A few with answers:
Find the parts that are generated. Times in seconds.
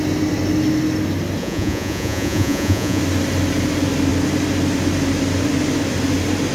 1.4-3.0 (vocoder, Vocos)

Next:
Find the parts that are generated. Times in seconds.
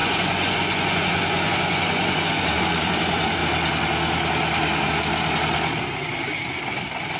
0.0-3.4 (vocoder, Vocos)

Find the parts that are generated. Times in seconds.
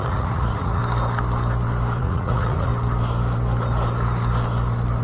0.0-0.8 (vocoder, Vocos); 2.0-2.7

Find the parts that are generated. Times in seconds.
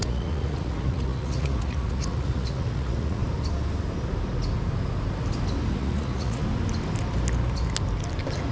0.0-3.2 (vocoder, Vocos); 5.7-6.4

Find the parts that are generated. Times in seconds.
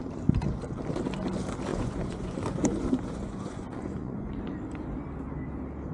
1.7-4.4 (vocoder, Vocos)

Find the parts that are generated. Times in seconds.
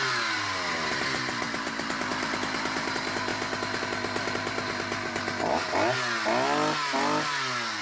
none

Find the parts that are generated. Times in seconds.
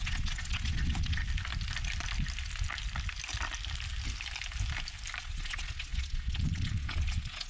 0.0-1.2 (vocoder, Vocos); 5.2-7.5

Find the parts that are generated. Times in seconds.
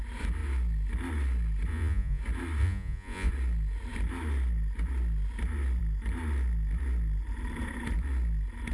1.7-2.2 (vocoder, Vocos); 2.6-3.3